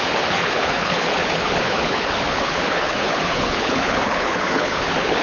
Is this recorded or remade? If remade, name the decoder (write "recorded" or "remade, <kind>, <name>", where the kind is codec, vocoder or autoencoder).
remade, codec, HILCodec